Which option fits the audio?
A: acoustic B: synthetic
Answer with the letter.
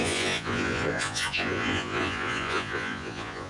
B